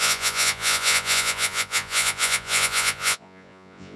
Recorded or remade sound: remade